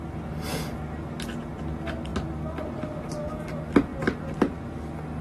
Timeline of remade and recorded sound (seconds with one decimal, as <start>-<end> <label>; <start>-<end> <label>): 0.0-5.2 recorded